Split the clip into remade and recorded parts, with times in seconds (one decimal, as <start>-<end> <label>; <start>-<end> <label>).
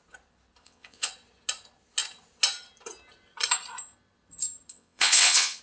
0.0-0.6 recorded; 0.6-1.1 remade; 1.1-4.7 recorded; 4.7-5.6 remade